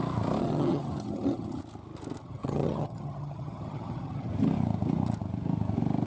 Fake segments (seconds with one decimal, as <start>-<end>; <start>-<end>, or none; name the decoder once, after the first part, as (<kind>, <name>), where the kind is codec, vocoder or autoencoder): 0.4-1.6 (vocoder, HiFi-GAN); 2.2-4.3